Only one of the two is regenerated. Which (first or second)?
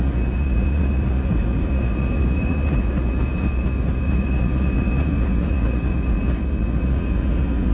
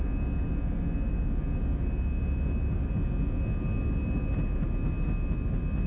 first